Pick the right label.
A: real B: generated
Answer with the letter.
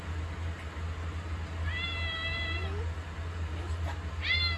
A